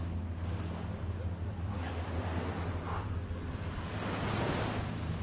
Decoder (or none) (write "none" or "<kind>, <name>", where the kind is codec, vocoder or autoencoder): none